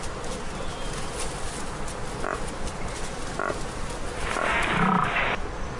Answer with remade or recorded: recorded